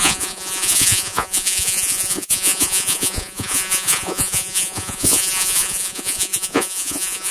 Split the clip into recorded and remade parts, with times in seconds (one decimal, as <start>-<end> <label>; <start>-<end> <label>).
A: 0.0-7.3 remade